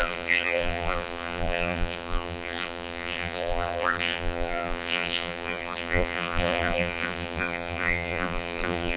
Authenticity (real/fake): fake